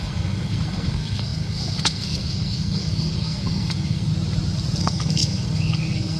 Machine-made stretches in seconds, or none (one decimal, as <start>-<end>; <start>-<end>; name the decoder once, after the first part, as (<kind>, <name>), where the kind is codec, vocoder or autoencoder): 0.0-4.1 (codec, SNAC); 4.8-6.2